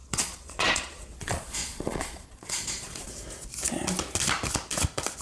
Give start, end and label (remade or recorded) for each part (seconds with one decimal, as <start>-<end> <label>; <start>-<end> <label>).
0.0-3.1 remade; 3.1-5.2 recorded

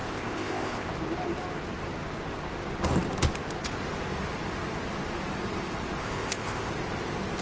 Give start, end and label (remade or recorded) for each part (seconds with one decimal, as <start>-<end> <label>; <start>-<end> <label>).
0.0-0.9 remade; 0.9-6.0 recorded; 6.0-6.7 remade; 6.7-7.4 recorded

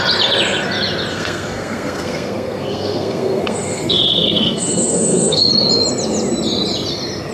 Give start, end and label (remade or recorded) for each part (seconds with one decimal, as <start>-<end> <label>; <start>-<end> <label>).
0.0-1.1 recorded; 1.1-5.5 remade; 5.5-7.3 recorded